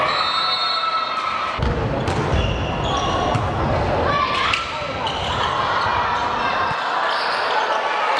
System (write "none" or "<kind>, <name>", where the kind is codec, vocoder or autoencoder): none